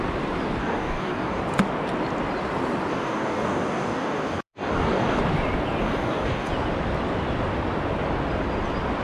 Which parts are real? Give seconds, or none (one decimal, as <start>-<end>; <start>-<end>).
0.0-0.6; 1.4-2.9; 5.2-5.8; 6.5-9.0